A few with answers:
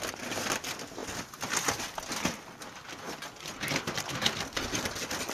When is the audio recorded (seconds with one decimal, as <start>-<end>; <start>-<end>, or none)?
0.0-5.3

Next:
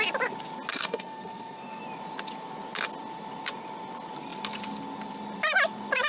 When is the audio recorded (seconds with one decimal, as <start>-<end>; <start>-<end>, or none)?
0.0-0.7; 1.8-6.1

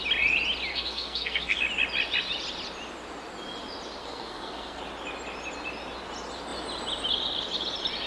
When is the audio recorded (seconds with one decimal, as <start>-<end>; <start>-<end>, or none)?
0.0-0.7; 1.6-4.0; 4.8-8.1

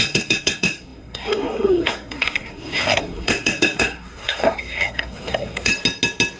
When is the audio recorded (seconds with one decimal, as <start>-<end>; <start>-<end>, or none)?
5.7-6.4

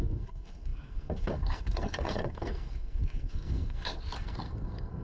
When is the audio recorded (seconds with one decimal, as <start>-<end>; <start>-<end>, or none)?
none

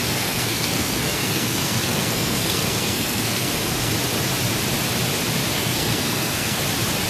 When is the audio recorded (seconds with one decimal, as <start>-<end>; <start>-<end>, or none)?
3.9-5.5; 6.6-7.1